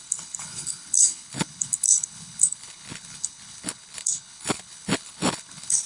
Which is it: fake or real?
fake